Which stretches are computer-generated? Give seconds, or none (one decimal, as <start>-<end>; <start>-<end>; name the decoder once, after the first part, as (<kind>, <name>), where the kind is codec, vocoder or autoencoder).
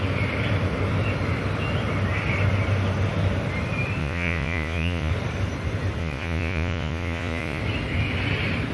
4.0-5.1 (vocoder, Vocos); 6.0-7.6